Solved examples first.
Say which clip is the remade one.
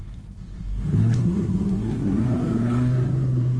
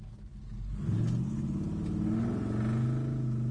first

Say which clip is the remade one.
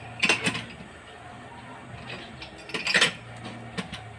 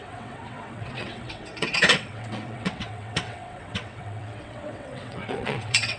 second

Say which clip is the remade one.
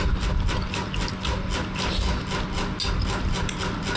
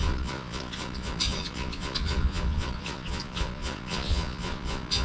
second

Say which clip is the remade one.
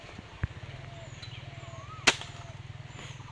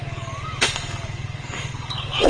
second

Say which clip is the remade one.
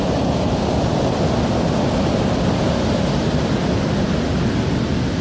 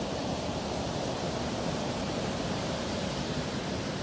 second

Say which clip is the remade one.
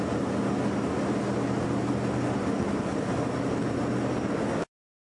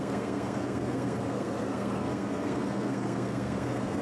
second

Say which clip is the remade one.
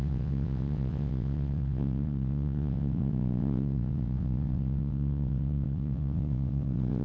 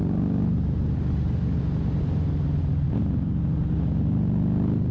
first